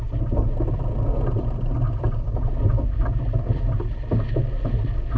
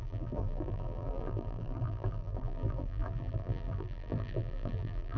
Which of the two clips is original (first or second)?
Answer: first